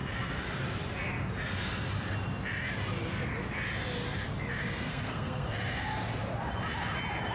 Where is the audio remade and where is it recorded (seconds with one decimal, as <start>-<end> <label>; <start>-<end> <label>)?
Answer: 0.0-4.9 recorded; 4.9-5.5 remade; 5.5-7.3 recorded